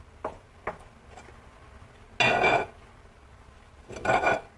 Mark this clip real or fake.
real